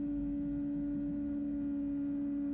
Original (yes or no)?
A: yes